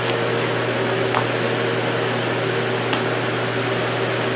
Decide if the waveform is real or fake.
real